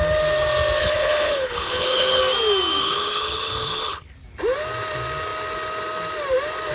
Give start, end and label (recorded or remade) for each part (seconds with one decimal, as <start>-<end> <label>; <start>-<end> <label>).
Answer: 0.0-0.8 recorded; 0.8-2.2 remade; 2.2-2.8 recorded; 2.8-4.1 remade; 4.1-6.7 recorded